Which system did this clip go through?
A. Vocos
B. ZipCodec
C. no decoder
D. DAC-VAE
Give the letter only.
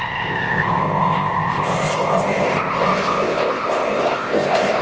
B